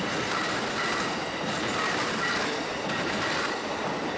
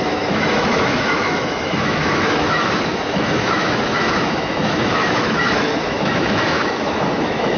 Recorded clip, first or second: first